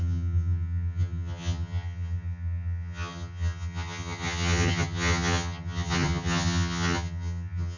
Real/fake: fake